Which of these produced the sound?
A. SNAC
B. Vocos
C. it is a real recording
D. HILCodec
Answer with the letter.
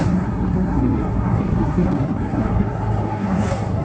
A